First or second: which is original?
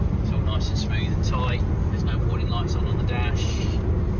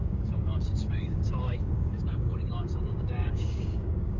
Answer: first